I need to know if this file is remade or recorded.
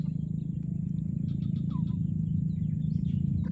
recorded